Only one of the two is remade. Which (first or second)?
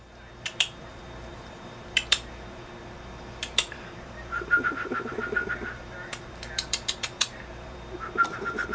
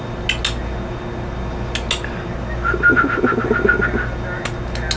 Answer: first